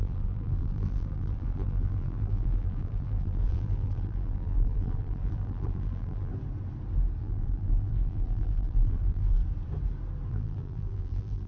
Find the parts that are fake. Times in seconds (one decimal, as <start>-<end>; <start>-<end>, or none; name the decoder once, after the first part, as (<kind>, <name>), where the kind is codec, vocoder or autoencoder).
0.0-6.3 (vocoder, BigVGAN v2); 7.2-9.4; 10.3-11.5